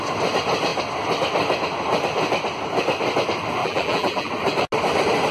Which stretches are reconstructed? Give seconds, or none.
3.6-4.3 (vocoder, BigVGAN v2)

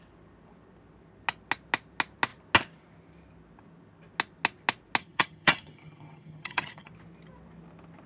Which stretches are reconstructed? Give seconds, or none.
5.0-6.9 (vocoder, HiFi-GAN)